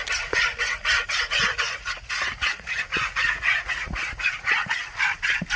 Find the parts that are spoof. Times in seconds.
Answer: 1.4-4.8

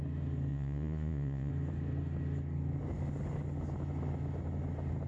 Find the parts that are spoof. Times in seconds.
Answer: 0.5-1.5

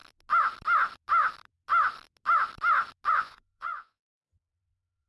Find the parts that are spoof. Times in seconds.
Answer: 3.1-5.1